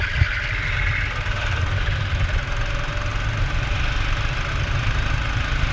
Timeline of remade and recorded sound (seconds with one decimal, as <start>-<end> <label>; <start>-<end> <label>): 0.0-5.7 recorded